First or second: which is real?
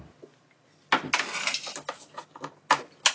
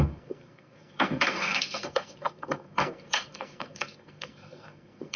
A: first